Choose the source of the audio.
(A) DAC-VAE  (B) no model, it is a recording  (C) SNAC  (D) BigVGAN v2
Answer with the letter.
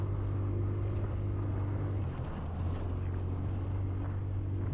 B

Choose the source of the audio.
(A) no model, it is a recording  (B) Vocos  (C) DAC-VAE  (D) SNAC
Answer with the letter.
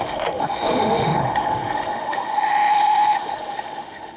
C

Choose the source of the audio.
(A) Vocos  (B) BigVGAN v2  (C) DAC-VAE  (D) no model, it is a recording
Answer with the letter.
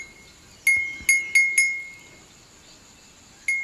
D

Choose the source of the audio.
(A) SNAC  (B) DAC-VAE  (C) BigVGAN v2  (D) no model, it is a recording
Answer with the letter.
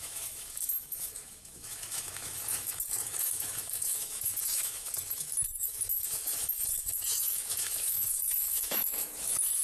B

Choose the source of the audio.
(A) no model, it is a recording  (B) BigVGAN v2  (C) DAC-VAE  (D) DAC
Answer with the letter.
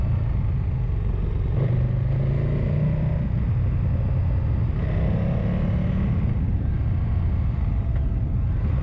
A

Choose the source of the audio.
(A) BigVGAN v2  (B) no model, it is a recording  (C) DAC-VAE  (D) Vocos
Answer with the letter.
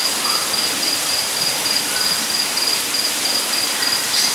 B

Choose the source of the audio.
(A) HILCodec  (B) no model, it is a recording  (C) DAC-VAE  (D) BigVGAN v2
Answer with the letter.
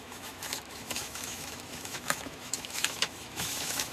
C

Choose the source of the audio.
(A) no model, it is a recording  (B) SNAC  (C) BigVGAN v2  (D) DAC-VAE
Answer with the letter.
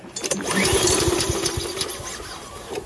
A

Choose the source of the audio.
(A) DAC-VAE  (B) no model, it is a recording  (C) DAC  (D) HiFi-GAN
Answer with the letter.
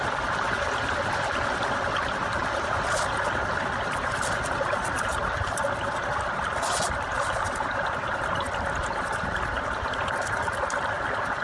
B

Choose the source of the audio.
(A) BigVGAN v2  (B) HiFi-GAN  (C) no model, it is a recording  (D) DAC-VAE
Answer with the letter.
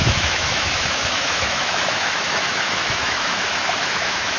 D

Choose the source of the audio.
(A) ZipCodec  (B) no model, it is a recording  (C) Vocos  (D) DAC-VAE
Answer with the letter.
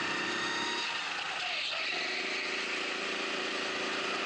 B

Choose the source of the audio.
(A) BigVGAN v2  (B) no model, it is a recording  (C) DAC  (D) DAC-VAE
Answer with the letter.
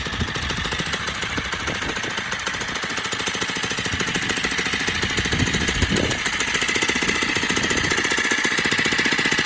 B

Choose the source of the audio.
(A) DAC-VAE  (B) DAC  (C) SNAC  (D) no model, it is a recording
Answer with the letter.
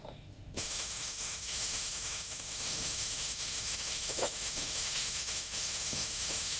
A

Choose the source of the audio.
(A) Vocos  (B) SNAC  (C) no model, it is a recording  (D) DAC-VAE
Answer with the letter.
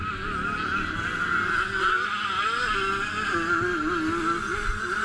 C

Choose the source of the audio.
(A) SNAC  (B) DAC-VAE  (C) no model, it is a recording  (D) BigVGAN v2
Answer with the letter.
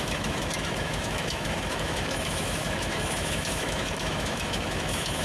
B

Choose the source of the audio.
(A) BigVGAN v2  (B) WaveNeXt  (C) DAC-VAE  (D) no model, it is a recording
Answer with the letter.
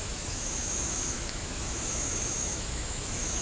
C